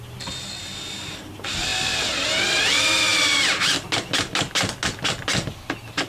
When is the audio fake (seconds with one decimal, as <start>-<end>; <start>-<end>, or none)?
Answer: none